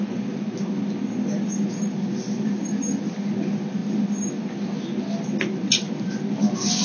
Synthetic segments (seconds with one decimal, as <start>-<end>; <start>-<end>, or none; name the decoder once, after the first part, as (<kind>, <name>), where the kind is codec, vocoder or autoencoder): none

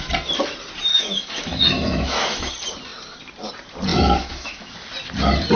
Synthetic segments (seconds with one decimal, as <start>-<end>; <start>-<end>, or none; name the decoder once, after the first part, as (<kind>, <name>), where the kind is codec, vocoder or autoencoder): 0.9-2.5 (autoencoder, DAC-VAE); 3.9-4.7